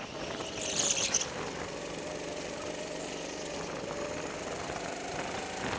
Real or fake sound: real